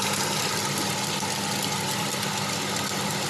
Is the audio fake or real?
real